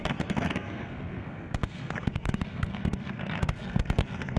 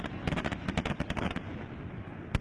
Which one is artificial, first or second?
first